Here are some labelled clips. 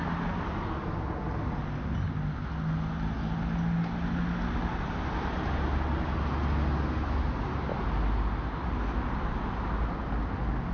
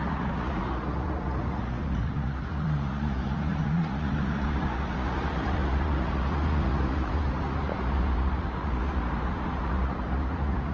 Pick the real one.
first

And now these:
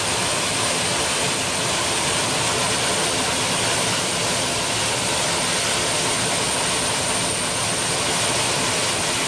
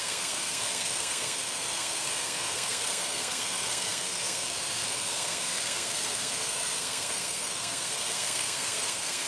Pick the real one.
first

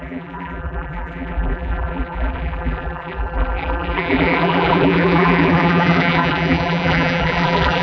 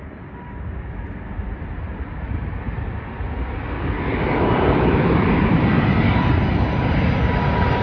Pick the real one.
second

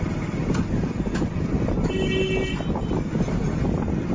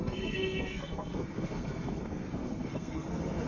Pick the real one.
first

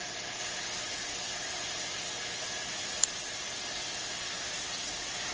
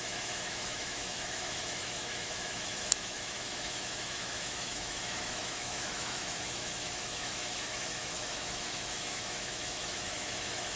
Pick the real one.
first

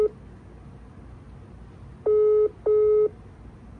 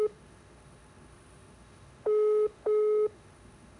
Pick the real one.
first